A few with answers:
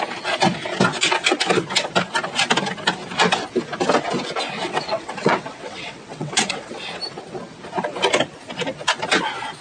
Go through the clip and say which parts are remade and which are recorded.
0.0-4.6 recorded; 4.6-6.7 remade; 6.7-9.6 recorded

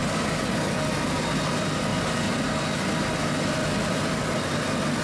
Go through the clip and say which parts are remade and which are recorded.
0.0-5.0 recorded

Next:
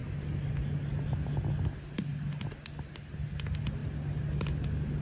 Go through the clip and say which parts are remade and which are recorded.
0.0-5.0 recorded

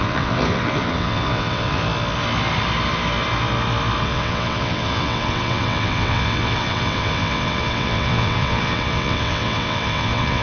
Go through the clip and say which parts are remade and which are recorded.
0.0-1.8 remade; 1.8-4.0 recorded; 4.0-10.4 remade